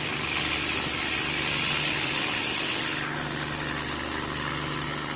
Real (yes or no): yes